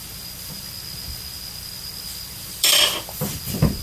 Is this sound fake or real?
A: fake